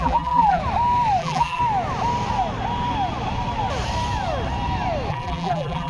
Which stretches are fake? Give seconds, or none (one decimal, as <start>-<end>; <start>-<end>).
0.0-0.6; 1.2-1.6; 5.1-5.9